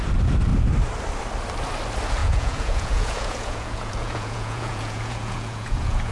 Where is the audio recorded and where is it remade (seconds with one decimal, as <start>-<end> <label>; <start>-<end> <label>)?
0.0-2.2 recorded; 2.2-6.1 remade